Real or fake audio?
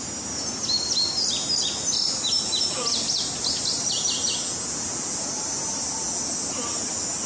real